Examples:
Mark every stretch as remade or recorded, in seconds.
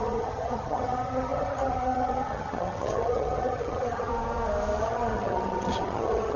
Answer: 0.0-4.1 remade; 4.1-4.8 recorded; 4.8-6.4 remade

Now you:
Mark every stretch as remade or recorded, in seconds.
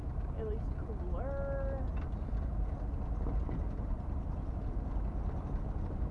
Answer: 0.0-6.1 recorded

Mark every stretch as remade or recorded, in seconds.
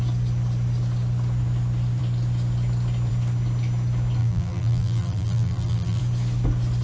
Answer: 0.0-4.2 recorded; 4.2-6.0 remade; 6.0-6.8 recorded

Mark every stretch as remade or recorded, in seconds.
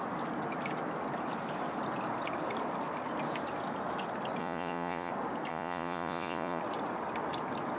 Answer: 0.0-4.4 recorded; 4.4-5.1 remade; 5.1-5.5 recorded; 5.5-6.6 remade; 6.6-7.8 recorded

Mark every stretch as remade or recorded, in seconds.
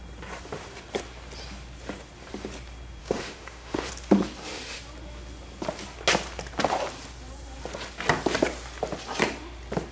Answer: 0.0-3.0 recorded; 3.0-3.9 remade; 3.9-9.9 recorded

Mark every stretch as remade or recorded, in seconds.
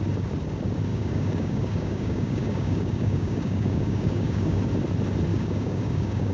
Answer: 0.0-0.9 recorded; 0.9-4.6 remade; 4.6-5.3 recorded; 5.3-6.3 remade